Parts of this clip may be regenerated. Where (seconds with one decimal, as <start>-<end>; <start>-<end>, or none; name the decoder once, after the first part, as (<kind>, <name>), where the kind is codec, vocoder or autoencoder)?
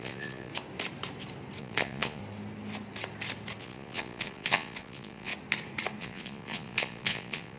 0.0-0.5 (vocoder, Vocos); 1.6-2.2; 3.6-5.3; 6.0-7.6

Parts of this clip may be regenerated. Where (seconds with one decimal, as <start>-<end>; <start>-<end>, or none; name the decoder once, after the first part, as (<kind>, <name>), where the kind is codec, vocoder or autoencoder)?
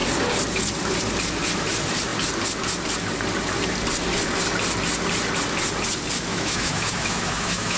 6.3-7.8 (autoencoder, DAC-VAE)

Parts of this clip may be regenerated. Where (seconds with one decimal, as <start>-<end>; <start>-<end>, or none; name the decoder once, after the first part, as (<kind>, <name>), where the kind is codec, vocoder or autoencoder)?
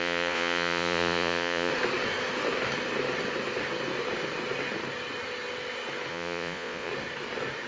0.0-1.7 (vocoder, Vocos); 6.1-6.9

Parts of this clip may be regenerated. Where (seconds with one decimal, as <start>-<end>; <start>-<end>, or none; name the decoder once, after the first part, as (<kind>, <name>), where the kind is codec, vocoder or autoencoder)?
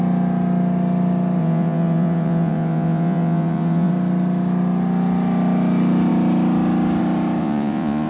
1.4-3.9 (vocoder, Vocos); 7.4-8.1